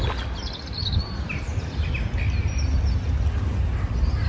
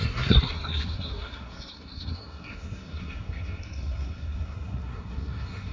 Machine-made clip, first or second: second